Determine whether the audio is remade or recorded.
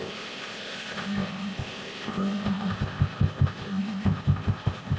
remade